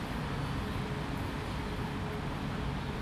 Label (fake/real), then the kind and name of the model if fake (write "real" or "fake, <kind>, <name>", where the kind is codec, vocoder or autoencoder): real